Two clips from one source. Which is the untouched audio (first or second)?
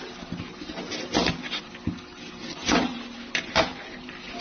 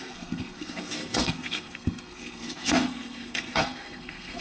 first